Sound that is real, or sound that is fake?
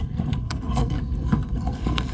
fake